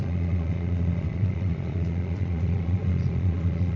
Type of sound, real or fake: fake